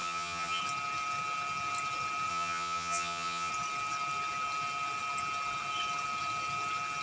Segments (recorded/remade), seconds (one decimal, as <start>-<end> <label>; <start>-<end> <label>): 0.0-0.6 remade; 0.6-2.3 recorded; 2.3-3.5 remade; 3.5-7.0 recorded